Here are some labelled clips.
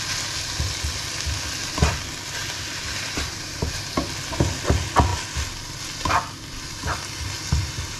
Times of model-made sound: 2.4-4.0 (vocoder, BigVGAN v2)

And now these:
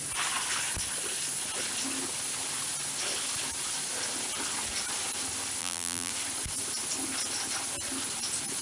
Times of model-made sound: 5.6-6.1 (vocoder, BigVGAN v2)

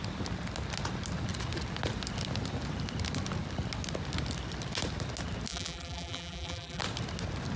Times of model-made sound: 5.5-6.8 (vocoder, BigVGAN v2)

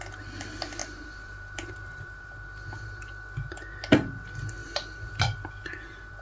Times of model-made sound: 0.8-3.0 (vocoder, BigVGAN v2); 4.6-5.5

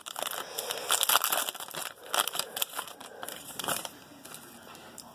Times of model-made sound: 1.8-3.8 (vocoder, BigVGAN v2)

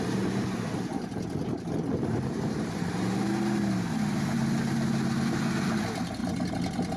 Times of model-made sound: none